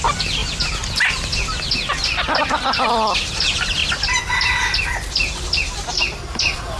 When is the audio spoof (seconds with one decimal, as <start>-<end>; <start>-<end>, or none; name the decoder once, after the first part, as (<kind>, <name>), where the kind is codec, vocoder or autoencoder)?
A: none